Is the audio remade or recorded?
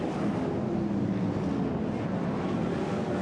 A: recorded